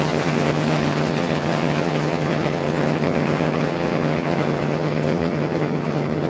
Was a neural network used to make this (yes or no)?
yes